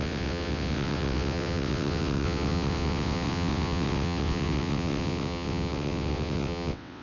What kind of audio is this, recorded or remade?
remade